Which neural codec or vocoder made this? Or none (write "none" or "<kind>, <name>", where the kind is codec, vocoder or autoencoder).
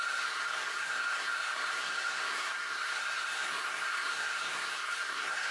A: codec, SNAC